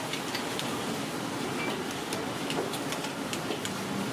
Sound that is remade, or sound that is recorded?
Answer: recorded